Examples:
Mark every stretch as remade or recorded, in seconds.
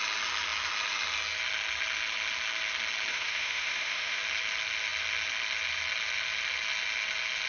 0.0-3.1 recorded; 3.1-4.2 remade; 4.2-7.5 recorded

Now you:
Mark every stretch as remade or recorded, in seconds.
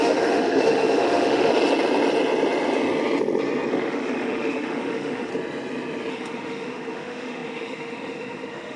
0.0-1.5 remade; 1.5-3.7 recorded; 3.7-5.3 remade; 5.3-6.1 recorded; 6.1-8.8 remade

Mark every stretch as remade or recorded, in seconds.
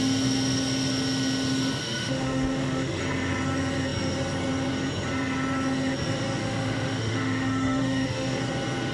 0.0-1.8 recorded; 1.8-3.0 remade; 3.0-6.4 recorded; 6.4-8.4 remade; 8.4-8.9 recorded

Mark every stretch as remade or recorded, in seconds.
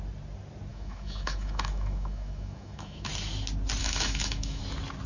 0.0-0.7 recorded; 0.7-3.1 remade; 3.1-3.8 recorded; 3.8-4.6 remade; 4.6-5.1 recorded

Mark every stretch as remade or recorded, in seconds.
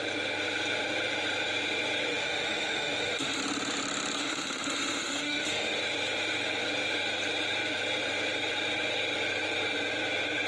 0.0-2.1 recorded; 2.1-3.4 remade; 3.4-4.2 recorded; 4.2-5.8 remade; 5.8-10.5 recorded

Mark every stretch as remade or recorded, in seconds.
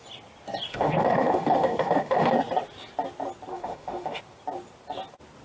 0.0-0.7 recorded; 0.7-2.3 remade; 2.3-3.5 recorded; 3.5-4.2 remade; 4.2-5.4 recorded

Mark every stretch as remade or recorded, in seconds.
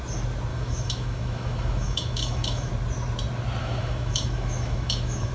0.0-0.5 recorded; 0.5-2.7 remade; 2.7-3.6 recorded; 3.6-5.3 remade